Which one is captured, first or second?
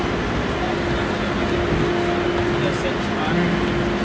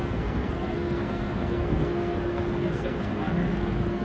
first